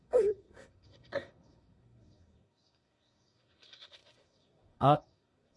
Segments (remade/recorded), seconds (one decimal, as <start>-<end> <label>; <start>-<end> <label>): 0.0-5.6 remade